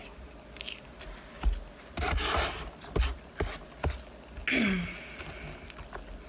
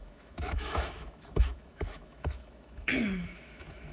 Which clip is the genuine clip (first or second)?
first